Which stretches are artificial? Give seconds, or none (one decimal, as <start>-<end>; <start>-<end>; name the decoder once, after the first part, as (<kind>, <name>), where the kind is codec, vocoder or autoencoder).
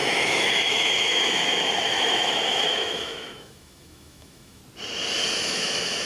0.0-4.6 (autoencoder, DAC-VAE); 5.4-6.1